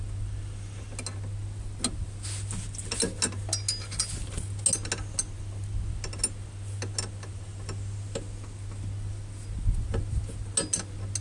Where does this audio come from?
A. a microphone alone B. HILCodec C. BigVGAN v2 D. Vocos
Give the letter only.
A